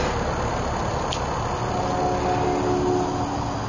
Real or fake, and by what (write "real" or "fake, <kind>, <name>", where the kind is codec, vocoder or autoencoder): real